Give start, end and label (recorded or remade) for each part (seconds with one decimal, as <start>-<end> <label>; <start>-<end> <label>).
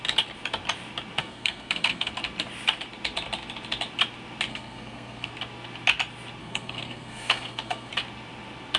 0.0-1.2 recorded; 1.2-2.1 remade; 2.1-4.5 recorded; 4.5-5.3 remade; 5.3-6.4 recorded; 6.4-7.9 remade; 7.9-8.8 recorded